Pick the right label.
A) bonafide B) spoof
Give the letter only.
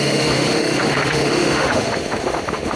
B